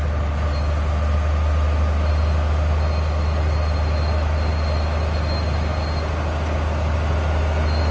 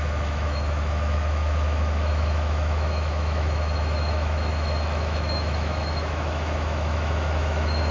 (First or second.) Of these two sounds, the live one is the first